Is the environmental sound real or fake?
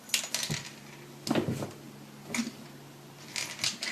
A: real